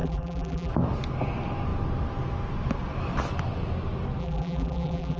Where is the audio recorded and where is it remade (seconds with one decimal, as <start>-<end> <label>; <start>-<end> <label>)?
0.0-0.7 remade; 0.7-4.2 recorded; 4.2-5.2 remade